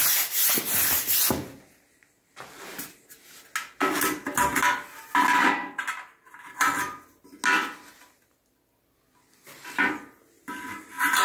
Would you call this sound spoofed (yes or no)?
no